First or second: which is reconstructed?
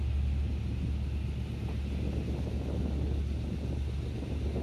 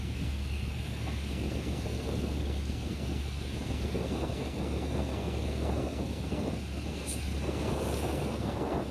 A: second